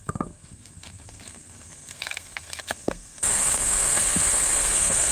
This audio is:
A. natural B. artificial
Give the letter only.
B